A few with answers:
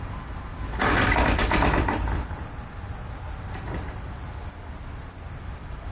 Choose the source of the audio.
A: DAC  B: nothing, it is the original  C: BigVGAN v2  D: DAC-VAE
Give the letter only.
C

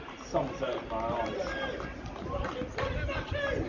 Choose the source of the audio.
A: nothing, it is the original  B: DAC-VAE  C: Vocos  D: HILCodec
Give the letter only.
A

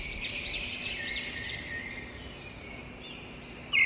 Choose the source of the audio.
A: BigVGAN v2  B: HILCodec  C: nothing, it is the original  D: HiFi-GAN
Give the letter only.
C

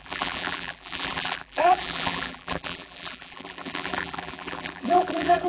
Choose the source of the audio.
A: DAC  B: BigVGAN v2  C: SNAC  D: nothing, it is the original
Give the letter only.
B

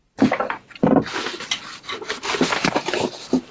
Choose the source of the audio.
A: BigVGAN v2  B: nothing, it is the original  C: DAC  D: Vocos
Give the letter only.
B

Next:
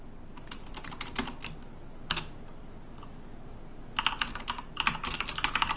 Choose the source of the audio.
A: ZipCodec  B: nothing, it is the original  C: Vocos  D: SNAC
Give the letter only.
B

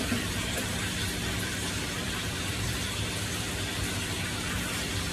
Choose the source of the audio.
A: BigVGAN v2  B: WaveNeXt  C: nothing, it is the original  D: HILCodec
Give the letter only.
A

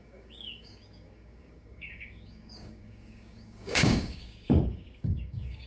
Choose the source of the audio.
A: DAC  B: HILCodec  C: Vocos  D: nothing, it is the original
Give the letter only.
A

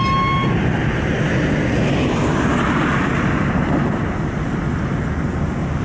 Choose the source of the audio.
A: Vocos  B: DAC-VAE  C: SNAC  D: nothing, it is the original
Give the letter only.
D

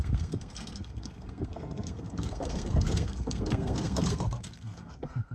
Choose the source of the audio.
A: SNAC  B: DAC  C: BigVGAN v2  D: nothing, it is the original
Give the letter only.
A